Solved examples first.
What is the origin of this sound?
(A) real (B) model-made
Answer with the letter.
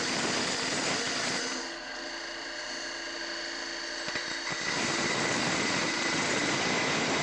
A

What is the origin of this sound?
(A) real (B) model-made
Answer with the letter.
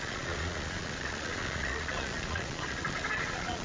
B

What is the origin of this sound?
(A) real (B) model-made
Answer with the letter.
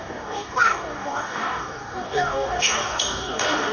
B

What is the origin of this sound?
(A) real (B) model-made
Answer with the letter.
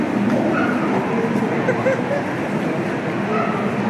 A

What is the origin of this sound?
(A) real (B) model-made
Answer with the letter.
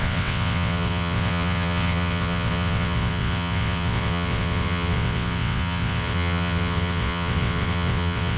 B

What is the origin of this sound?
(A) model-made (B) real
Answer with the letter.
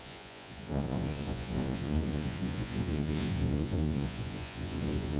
A